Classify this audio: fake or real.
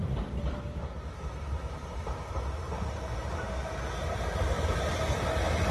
real